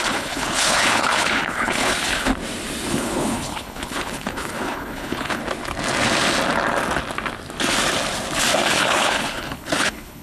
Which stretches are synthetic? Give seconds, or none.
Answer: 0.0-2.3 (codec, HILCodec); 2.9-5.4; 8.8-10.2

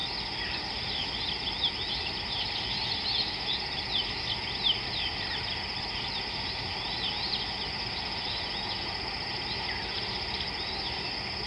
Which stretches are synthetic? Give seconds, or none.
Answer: none

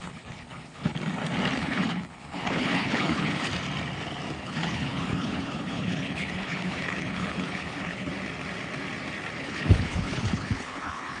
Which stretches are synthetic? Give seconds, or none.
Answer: 0.0-0.9 (codec, HILCodec); 1.6-3.5; 4.4-8.1; 9.4-11.2

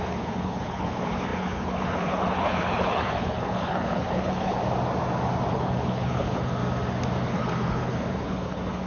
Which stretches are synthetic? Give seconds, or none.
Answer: 0.0-4.6 (codec, HILCodec); 5.5-6.6; 7.2-8.9

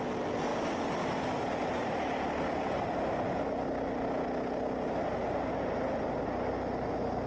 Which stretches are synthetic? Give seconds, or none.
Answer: none

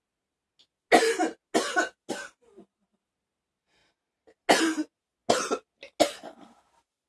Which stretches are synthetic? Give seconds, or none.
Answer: none